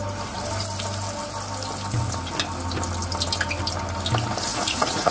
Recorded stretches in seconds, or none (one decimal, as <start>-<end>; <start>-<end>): 0.0-4.5